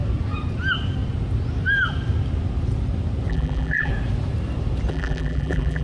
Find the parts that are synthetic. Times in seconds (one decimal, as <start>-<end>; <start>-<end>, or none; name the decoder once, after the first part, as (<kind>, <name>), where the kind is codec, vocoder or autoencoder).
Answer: 3.3-3.9 (vocoder, BigVGAN v2); 4.9-5.8